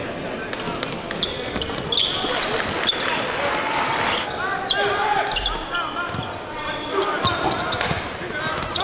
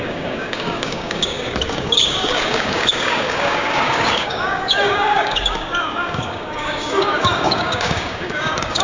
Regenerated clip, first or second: second